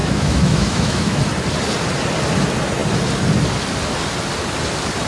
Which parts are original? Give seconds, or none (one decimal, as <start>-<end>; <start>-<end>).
1.2-5.1